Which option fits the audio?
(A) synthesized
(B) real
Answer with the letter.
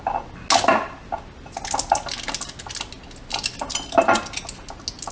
B